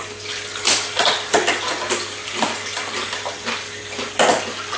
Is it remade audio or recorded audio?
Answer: recorded